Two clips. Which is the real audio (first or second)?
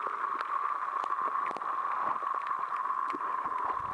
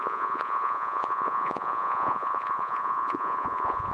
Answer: first